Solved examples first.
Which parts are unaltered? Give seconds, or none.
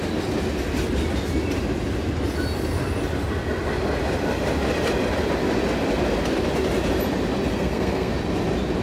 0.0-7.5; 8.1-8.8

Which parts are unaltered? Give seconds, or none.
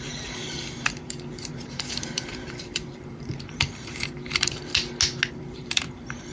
4.7-5.3